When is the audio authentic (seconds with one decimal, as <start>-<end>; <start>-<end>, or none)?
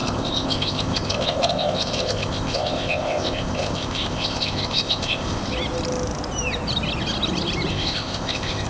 5.4-7.7